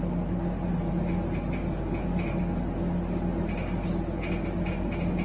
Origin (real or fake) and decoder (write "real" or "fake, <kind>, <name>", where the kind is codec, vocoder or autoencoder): real